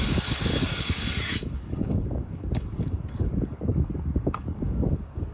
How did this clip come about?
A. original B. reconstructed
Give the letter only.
B